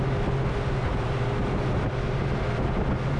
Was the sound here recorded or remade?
recorded